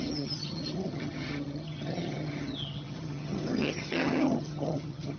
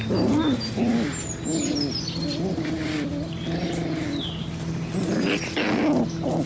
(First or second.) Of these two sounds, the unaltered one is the second